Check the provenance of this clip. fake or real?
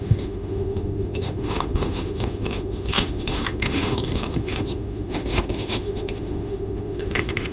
fake